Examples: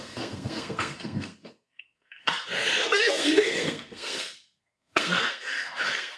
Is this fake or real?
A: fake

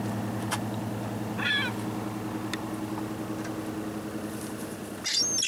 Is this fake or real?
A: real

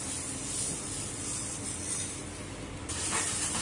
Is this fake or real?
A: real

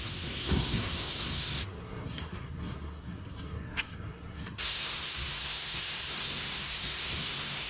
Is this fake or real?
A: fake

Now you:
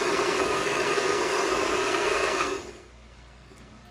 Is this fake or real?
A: fake